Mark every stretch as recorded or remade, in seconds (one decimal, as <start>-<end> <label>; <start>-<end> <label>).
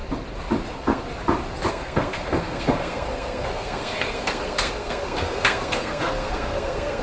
0.0-0.7 recorded; 0.7-1.1 remade; 1.1-1.7 recorded; 1.7-7.0 remade